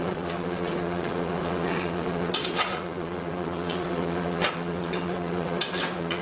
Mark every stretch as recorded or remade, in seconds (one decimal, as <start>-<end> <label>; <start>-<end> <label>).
0.0-6.2 remade